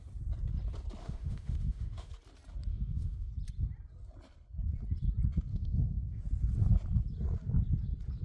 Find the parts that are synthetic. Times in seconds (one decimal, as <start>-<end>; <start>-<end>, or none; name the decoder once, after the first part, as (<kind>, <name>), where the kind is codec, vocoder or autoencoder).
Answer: 1.0-2.1 (autoencoder, DAC-VAE); 2.7-3.3; 5.5-6.2